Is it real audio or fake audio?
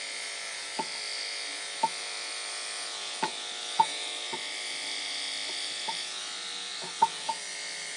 fake